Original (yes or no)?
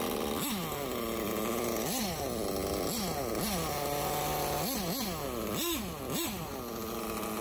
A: yes